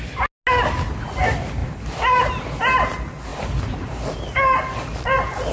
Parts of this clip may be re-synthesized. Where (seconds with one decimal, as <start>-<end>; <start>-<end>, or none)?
1.6-2.3; 3.3-4.0